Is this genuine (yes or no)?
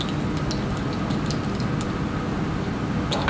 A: yes